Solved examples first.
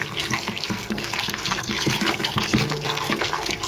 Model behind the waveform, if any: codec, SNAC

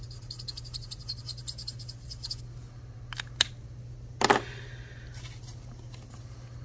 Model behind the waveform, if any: none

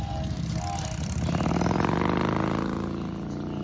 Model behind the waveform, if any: none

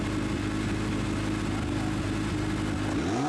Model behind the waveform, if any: none